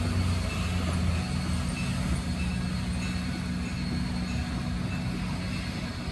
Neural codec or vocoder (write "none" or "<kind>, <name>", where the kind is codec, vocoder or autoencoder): none